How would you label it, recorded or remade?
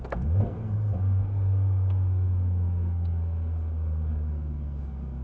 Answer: remade